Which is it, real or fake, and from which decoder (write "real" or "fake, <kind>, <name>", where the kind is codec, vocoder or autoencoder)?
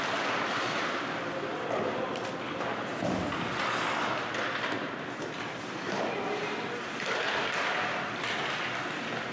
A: real